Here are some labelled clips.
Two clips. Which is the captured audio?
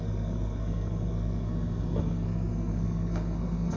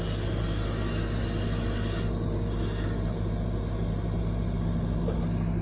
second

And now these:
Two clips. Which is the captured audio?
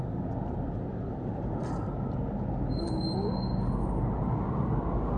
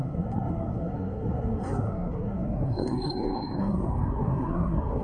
first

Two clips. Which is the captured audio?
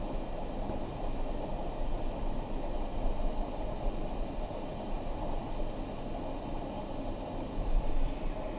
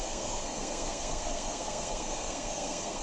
first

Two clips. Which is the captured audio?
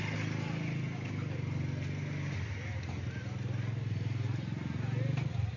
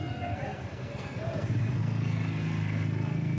first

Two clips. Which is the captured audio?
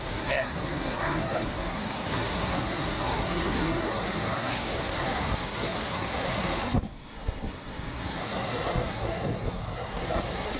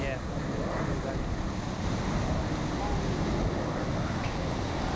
second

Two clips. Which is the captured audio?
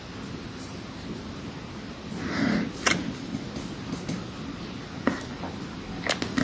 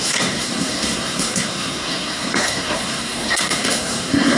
first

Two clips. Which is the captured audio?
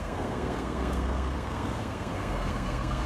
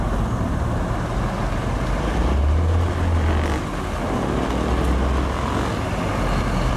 second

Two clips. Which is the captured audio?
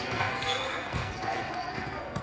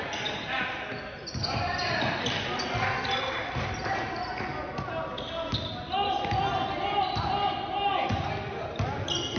second